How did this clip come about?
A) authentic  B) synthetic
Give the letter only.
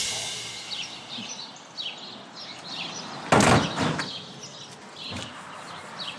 A